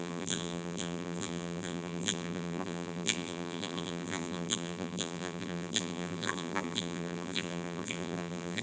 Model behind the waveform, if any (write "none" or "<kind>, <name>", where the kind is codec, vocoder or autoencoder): vocoder, BigVGAN v2